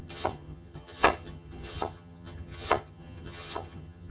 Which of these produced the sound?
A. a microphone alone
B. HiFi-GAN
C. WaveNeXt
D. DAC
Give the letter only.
B